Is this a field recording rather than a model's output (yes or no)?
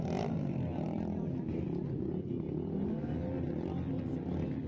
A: yes